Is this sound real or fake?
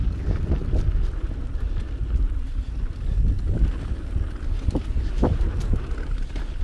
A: real